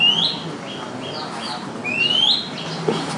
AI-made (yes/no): no